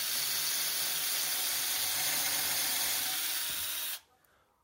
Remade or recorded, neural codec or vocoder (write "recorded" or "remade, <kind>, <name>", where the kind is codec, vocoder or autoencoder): recorded